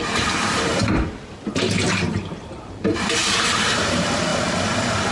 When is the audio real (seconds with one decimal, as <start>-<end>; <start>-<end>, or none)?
0.7-1.6; 4.3-5.1